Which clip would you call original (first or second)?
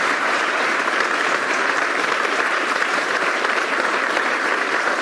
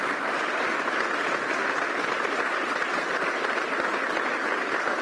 second